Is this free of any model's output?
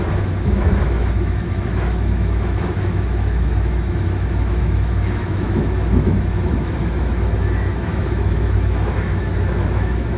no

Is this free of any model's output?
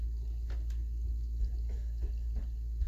yes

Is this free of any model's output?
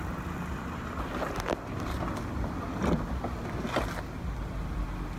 yes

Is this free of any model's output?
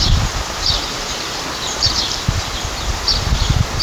no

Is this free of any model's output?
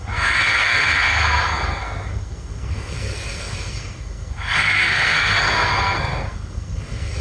no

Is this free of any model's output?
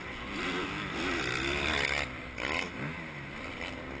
yes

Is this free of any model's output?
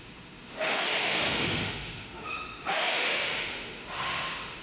no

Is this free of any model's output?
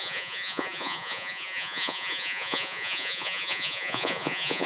no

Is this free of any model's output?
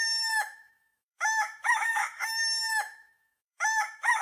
no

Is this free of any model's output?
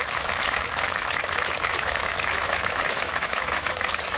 no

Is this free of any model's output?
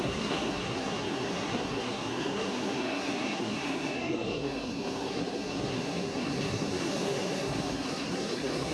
no